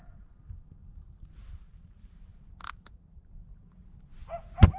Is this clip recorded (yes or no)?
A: yes